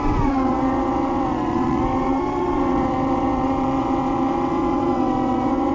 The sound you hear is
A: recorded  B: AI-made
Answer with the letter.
B